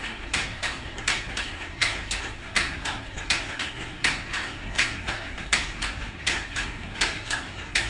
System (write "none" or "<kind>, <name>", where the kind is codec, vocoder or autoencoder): codec, SNAC